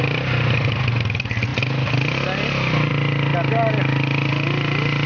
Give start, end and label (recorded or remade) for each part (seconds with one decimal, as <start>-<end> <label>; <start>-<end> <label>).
0.0-5.1 recorded